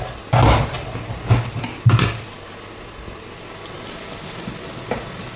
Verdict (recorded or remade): recorded